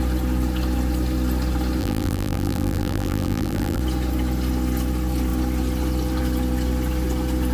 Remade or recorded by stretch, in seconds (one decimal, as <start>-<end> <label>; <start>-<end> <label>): 0.0-1.8 recorded; 1.8-3.8 remade; 3.8-7.5 recorded